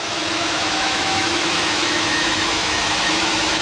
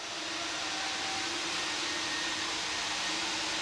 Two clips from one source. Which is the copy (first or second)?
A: first